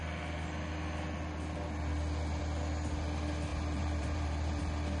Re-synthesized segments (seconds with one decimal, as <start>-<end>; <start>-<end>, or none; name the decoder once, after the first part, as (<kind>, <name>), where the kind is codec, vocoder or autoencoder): 3.5-4.6 (vocoder, BigVGAN v2)